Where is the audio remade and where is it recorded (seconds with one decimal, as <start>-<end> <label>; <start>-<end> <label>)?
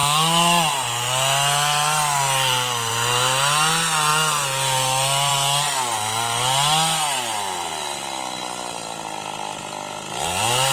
0.0-10.7 recorded